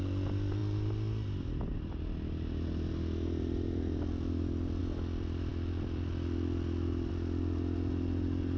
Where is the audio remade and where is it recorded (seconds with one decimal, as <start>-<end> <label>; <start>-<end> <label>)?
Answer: 0.0-8.6 recorded